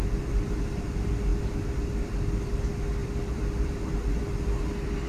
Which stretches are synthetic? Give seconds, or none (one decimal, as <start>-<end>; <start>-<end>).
3.0-4.2

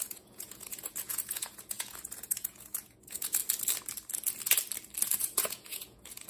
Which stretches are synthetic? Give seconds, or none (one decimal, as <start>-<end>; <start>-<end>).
0.0-3.4; 5.2-6.3

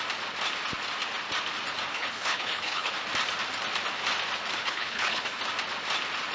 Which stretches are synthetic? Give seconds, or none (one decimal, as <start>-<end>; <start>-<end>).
1.9-2.9; 4.6-5.4

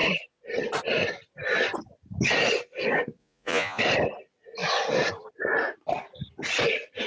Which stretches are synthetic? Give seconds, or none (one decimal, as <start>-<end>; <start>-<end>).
3.2-3.8